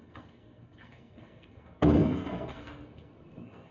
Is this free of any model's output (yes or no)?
no